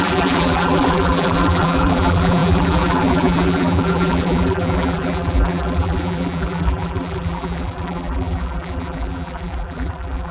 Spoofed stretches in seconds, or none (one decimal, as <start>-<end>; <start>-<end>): 0.0-10.3